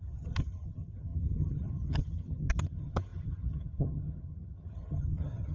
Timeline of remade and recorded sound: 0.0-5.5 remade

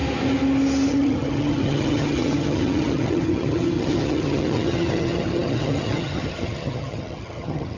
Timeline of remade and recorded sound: 0.0-0.9 recorded; 0.9-7.8 remade

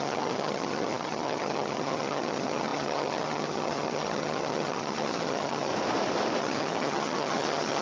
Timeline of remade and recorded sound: 0.0-5.7 remade; 5.7-6.4 recorded; 6.4-7.8 remade

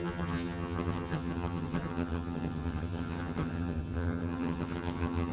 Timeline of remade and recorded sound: 0.0-5.3 remade

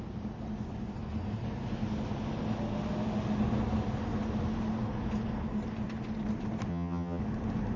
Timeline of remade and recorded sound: 0.0-6.7 recorded; 6.7-7.2 remade; 7.2-7.8 recorded